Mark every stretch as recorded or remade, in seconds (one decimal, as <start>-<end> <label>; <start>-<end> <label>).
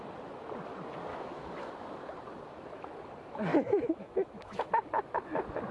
0.0-1.1 recorded; 1.1-1.7 remade; 1.7-3.5 recorded; 3.5-4.7 remade; 4.7-5.7 recorded